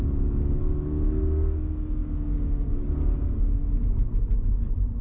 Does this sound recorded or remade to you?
recorded